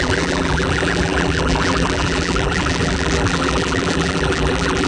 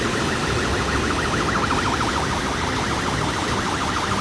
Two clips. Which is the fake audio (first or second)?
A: first